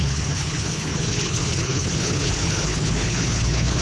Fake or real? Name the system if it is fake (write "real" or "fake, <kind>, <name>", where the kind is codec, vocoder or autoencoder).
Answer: fake, codec, HILCodec